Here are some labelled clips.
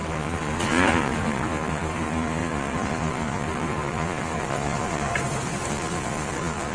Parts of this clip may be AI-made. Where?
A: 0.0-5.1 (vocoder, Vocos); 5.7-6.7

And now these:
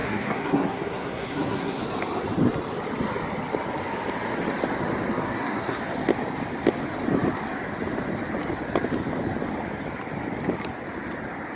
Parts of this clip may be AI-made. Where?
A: 0.0-1.8 (codec, SNAC); 5.1-5.8

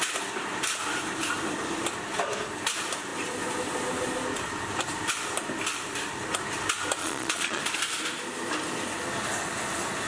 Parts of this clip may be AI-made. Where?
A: 7.0-7.6 (vocoder, Vocos)